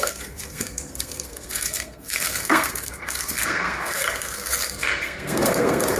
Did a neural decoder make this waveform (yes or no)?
yes